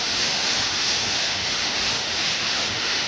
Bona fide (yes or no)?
no